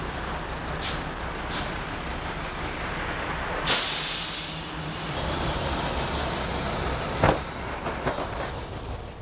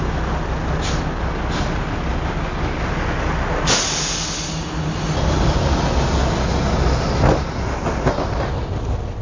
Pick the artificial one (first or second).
first